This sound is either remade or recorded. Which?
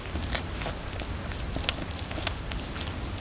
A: recorded